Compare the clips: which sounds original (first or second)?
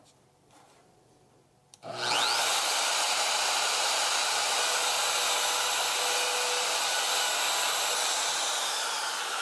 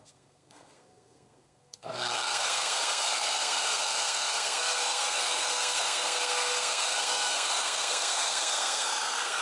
first